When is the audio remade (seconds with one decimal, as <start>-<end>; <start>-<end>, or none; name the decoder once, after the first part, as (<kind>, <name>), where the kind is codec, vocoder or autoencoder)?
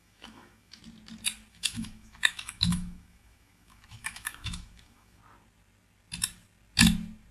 0.0-0.8 (autoencoder, DAC-VAE); 1.5-5.2